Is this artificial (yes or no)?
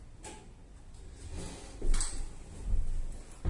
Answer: no